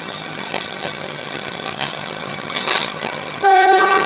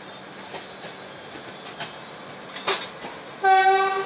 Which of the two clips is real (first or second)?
second